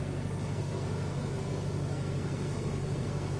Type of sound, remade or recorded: remade